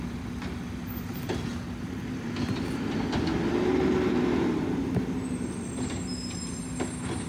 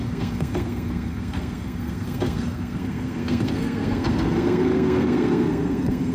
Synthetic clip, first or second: second